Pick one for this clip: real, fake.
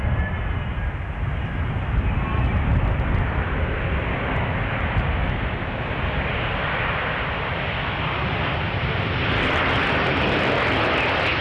real